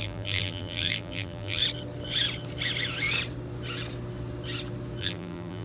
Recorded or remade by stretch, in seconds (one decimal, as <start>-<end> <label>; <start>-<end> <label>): 0.0-1.6 remade; 1.6-5.0 recorded; 5.0-5.6 remade

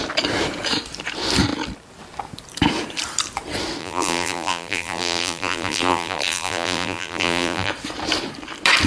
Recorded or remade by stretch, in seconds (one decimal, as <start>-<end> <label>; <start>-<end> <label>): 0.0-3.8 recorded; 3.8-7.7 remade; 7.7-8.9 recorded

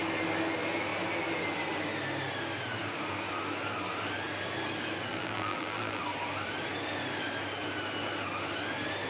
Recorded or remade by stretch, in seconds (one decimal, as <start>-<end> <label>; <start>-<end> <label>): 0.0-5.1 recorded; 5.1-6.0 remade; 6.0-9.1 recorded

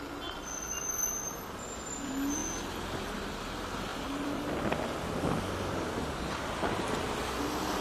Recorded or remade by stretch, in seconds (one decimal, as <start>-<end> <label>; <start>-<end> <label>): 0.0-3.9 recorded; 3.9-4.5 remade; 4.5-7.8 recorded

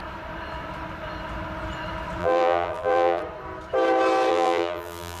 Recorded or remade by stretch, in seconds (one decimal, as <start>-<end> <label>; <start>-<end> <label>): 0.0-2.2 recorded; 2.2-3.2 remade; 3.2-4.3 recorded; 4.3-5.2 remade